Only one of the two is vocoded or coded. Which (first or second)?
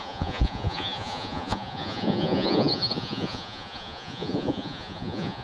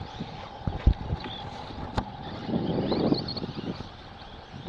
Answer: first